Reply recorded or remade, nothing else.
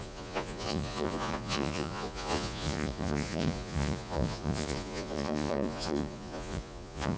remade